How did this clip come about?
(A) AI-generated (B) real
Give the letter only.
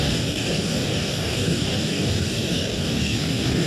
A